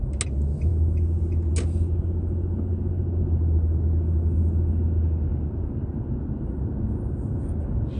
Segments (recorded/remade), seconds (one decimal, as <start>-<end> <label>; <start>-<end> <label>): 0.0-5.3 recorded; 5.3-6.8 remade; 6.8-8.0 recorded